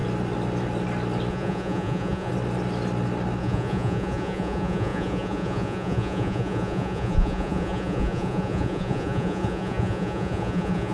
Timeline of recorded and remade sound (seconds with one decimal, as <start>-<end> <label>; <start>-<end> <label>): 0.0-1.3 recorded; 1.3-2.3 remade; 2.3-3.4 recorded; 3.4-10.9 remade